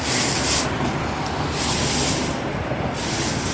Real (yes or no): yes